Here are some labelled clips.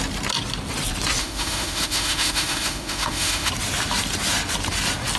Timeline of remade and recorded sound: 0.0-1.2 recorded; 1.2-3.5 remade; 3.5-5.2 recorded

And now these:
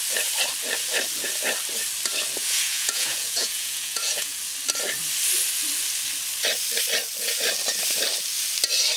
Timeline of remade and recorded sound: 0.0-2.4 recorded; 2.4-4.4 remade; 4.4-9.0 recorded